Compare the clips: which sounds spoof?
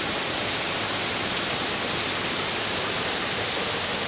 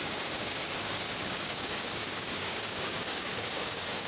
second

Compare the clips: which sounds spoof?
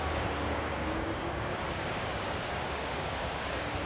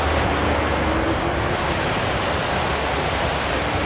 first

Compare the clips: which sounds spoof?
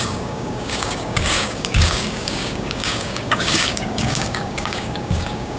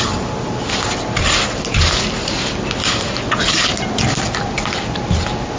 first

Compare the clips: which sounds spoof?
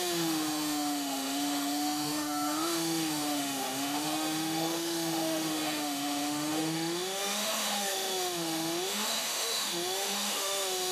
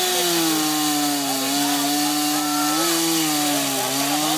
first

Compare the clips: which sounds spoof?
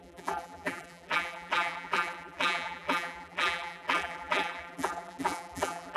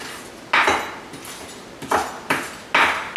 first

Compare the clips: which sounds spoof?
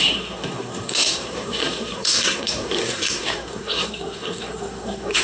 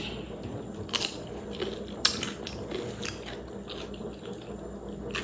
first